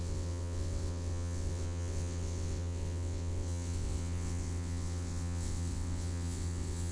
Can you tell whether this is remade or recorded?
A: remade